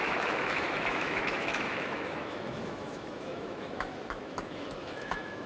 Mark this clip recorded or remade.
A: remade